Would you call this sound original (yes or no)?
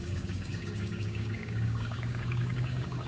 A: no